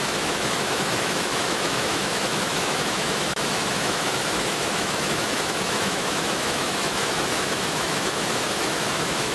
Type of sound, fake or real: fake